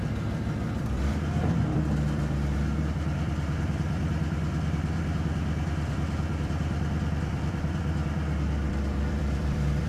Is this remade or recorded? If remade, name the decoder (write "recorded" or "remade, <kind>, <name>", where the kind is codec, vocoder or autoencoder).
remade, vocoder, BigVGAN v2